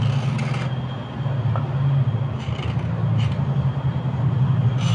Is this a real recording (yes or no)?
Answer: yes